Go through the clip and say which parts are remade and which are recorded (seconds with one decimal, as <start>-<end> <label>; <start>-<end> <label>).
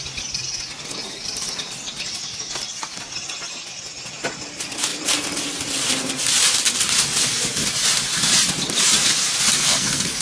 0.0-9.5 recorded; 9.5-10.2 remade